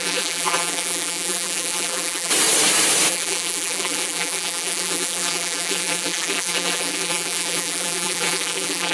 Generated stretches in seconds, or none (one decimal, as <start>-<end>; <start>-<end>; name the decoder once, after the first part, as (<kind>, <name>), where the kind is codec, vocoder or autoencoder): 0.0-2.3 (vocoder, BigVGAN v2); 3.1-8.9